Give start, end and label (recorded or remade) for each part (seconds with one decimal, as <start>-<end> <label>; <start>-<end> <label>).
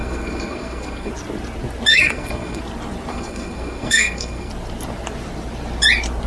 0.0-1.1 remade; 1.1-1.9 recorded; 1.9-2.6 remade; 2.6-3.1 recorded; 3.1-4.5 remade; 4.5-6.3 recorded